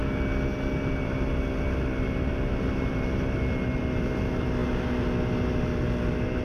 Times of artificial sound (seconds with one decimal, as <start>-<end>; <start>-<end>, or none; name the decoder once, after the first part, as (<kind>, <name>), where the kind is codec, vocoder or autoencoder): none